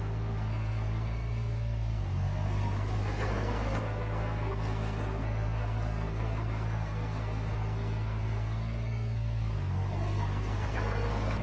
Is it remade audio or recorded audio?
remade